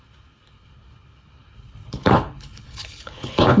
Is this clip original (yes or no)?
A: no